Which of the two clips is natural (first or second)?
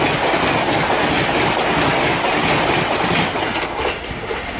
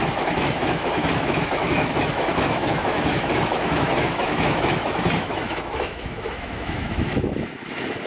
first